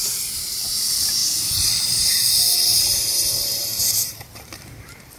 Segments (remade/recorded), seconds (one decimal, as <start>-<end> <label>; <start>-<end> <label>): 0.0-1.2 remade; 1.2-1.8 recorded; 1.8-5.2 remade